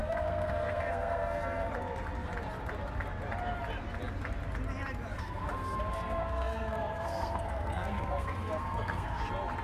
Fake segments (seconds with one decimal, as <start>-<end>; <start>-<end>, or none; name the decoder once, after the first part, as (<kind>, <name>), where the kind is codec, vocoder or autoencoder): 0.0-1.7 (codec, SNAC); 5.1-9.2